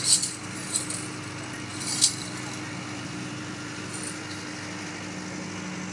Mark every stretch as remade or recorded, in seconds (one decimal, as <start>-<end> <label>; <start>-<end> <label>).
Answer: 0.0-1.7 recorded; 1.7-4.2 remade; 4.2-5.9 recorded